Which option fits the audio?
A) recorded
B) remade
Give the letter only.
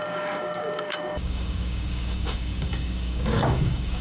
B